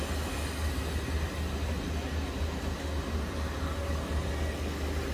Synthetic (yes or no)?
no